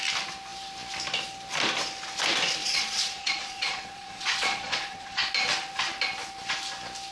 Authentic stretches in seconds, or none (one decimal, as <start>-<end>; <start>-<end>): 0.0-2.6; 5.3-7.1